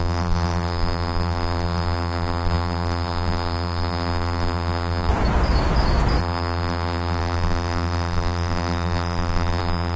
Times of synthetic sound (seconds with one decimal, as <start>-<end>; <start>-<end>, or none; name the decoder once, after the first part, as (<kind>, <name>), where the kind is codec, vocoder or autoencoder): 0.0-5.1 (vocoder, BigVGAN v2); 6.2-10.0